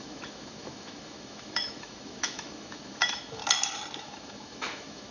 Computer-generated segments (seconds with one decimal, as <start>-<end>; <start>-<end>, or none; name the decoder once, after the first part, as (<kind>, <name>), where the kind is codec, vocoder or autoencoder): 0.0-3.4 (autoencoder, DAC-VAE); 4.0-5.1